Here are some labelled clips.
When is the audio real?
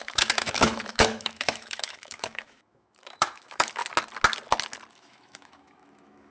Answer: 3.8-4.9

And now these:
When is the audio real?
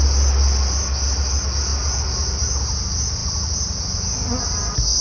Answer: 0.0-5.0